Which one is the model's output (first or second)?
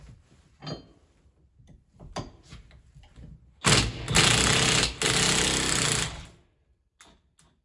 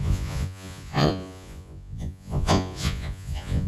second